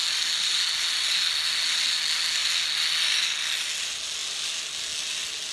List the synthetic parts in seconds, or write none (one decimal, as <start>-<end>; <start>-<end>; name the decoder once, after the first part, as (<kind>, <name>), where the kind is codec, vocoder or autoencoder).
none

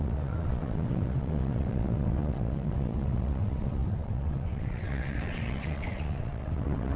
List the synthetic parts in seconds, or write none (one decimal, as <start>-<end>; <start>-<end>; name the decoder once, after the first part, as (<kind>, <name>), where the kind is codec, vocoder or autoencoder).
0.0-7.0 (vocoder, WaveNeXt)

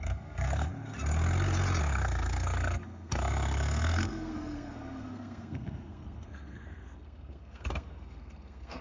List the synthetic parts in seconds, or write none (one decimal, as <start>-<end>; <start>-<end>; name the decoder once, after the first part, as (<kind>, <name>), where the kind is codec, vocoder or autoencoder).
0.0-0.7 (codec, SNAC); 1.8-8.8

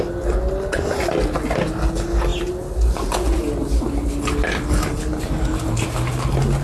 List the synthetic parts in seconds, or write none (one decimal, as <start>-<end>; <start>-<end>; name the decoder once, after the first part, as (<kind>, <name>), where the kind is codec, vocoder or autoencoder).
none

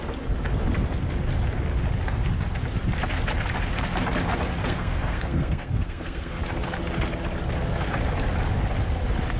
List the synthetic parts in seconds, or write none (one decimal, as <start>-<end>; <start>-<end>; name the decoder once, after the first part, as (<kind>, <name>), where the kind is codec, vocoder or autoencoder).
4.6-6.4 (codec, SNAC)

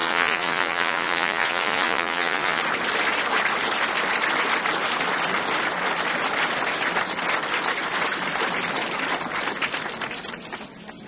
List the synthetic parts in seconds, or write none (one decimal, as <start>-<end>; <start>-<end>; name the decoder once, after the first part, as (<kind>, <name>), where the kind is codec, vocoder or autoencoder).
0.0-2.6 (vocoder, Vocos)